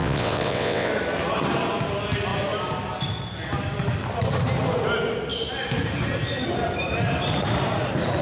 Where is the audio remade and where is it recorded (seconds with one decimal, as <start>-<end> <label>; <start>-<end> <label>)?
0.0-0.9 remade; 0.9-8.2 recorded

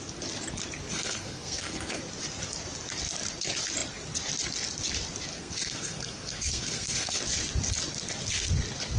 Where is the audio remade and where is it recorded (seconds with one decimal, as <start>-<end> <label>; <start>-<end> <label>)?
0.0-0.9 recorded; 0.9-2.0 remade; 2.0-5.3 recorded; 5.3-7.2 remade; 7.2-9.0 recorded

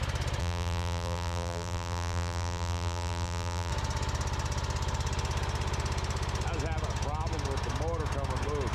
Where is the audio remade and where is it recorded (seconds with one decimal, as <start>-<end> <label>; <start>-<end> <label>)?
0.0-0.4 recorded; 0.4-3.7 remade; 3.7-8.7 recorded

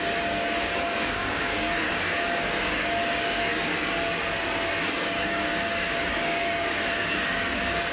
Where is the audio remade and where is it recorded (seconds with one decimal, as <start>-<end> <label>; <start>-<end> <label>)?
0.0-3.7 remade; 3.7-4.8 recorded; 4.8-7.9 remade

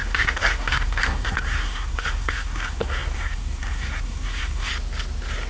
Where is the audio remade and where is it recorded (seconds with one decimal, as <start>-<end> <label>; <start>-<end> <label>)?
0.0-4.7 remade; 4.7-5.5 recorded

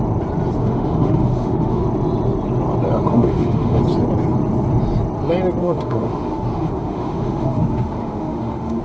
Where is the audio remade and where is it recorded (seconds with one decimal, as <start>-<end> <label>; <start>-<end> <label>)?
0.0-0.6 recorded; 0.6-1.8 remade; 1.8-3.1 recorded; 3.1-3.8 remade; 3.8-5.6 recorded; 5.6-8.8 remade

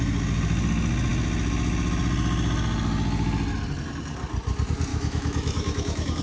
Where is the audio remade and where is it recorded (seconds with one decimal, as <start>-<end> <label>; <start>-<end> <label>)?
0.0-4.9 recorded; 4.9-6.2 remade